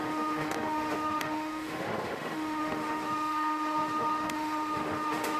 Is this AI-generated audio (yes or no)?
yes